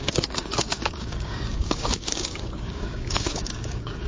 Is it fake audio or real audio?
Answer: fake